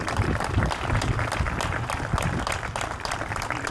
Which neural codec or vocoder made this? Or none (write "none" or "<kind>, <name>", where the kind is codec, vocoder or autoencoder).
none